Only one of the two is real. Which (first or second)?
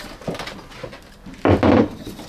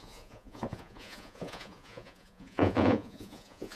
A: first